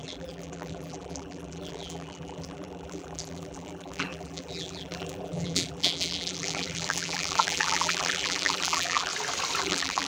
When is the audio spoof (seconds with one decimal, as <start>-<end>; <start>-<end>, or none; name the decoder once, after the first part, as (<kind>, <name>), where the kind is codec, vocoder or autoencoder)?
0.0-9.1 (vocoder, BigVGAN v2); 9.6-10.1